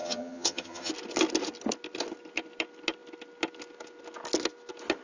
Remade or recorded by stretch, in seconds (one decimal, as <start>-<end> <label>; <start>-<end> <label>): 0.0-0.9 remade; 0.9-5.0 recorded